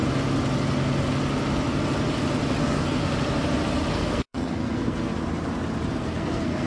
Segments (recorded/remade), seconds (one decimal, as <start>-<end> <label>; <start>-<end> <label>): 0.0-2.6 recorded; 2.6-3.0 remade; 3.0-3.9 recorded; 3.9-5.1 remade; 5.1-5.9 recorded; 5.9-6.7 remade